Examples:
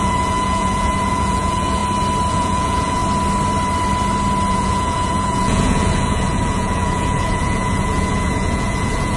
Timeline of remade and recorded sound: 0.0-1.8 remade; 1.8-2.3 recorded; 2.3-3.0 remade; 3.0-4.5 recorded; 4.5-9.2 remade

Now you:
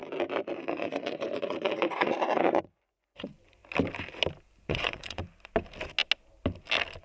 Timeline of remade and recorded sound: 0.0-0.7 recorded; 0.7-3.6 remade; 3.6-4.7 recorded; 4.7-5.2 remade; 5.2-7.0 recorded